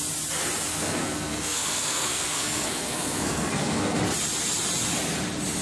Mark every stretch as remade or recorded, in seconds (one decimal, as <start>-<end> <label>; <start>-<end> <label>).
0.0-0.7 recorded; 0.7-4.0 remade; 4.0-5.6 recorded